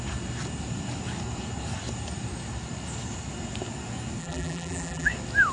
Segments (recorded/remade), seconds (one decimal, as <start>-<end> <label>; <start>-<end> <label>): 0.0-4.2 recorded; 4.2-5.1 remade; 5.1-5.5 recorded